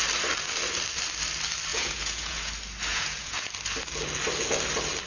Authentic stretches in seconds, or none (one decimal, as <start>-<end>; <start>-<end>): 0.0-1.7; 2.5-2.9; 3.5-5.1